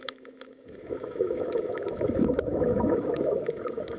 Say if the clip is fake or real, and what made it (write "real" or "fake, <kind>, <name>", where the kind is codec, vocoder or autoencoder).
fake, autoencoder, DAC-VAE